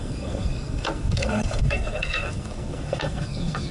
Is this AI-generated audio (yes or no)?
yes